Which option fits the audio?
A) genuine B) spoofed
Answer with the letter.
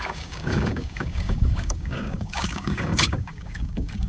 B